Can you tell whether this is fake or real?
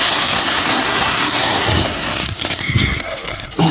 fake